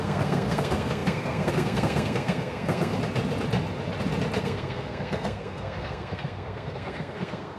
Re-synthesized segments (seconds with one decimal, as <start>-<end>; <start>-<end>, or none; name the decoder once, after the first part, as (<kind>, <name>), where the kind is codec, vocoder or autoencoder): 0.0-2.9 (codec, SNAC); 4.4-7.6